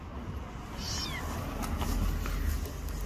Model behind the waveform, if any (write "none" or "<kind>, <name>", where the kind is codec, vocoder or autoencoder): none